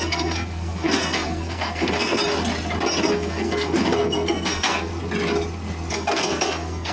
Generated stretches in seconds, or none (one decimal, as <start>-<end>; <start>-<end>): 0.0-2.2; 3.0-4.9; 5.9-6.9